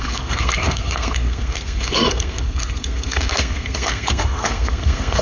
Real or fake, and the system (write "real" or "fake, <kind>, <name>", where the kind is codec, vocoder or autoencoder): fake, codec, SNAC